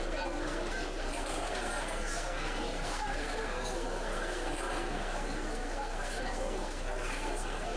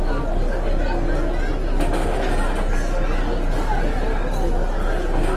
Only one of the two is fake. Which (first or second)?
first